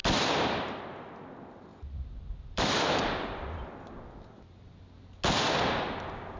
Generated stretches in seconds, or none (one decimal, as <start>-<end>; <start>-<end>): 1.7-3.7